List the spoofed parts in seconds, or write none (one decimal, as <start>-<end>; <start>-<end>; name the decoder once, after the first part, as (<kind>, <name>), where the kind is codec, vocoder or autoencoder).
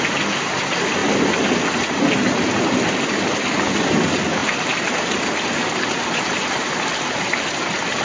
none